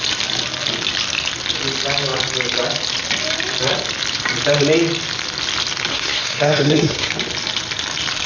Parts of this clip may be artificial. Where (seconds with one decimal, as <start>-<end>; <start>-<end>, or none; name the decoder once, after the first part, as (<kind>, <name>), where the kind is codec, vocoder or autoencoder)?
5.9-7.1 (codec, SNAC)